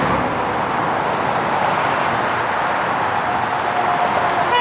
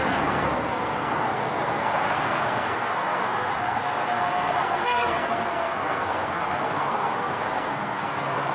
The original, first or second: first